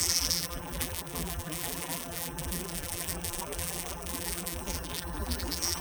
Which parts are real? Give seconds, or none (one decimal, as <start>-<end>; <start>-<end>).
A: none